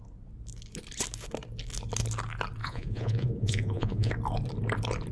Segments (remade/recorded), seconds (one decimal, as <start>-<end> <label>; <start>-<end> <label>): 0.0-2.6 recorded; 2.6-4.1 remade; 4.1-5.1 recorded